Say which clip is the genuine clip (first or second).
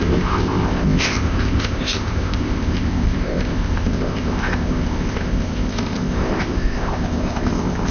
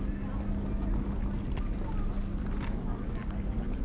second